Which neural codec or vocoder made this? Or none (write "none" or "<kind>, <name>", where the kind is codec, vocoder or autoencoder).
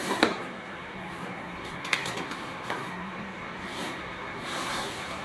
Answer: codec, SNAC